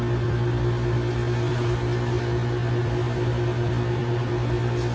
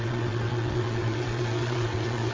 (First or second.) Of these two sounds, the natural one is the first